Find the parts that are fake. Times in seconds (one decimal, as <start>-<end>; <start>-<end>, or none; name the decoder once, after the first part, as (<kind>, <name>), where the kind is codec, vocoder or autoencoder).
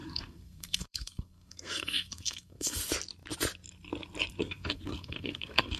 0.0-2.8 (codec, SNAC); 4.4-5.8